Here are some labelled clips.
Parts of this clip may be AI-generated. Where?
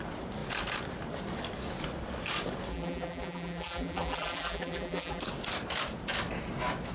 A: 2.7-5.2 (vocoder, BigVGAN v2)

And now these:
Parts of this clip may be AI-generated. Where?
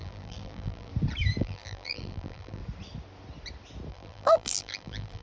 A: 0.0-0.9 (vocoder, BigVGAN v2); 1.4-2.6; 3.9-5.2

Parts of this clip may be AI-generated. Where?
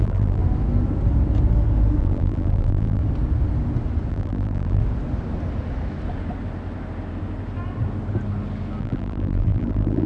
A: 0.0-0.4 (vocoder, BigVGAN v2); 2.0-3.0; 4.1-4.8; 8.8-10.1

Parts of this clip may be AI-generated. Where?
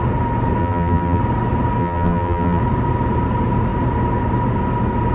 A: 0.6-1.2 (vocoder, BigVGAN v2); 1.8-2.6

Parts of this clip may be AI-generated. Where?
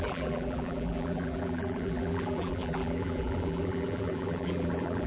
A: 0.0-5.1 (vocoder, BigVGAN v2)